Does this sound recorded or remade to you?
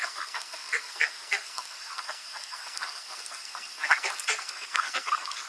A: remade